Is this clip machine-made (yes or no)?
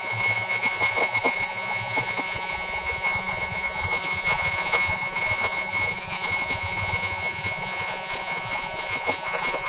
yes